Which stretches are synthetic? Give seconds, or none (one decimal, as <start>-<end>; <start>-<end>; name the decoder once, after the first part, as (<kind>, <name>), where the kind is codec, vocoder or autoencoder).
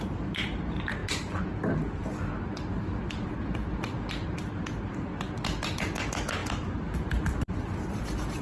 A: 2.7-4.1 (vocoder, BigVGAN v2); 6.4-7.5